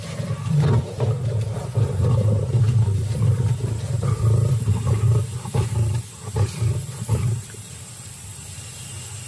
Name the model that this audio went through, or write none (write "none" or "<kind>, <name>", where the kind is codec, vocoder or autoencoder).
vocoder, BigVGAN v2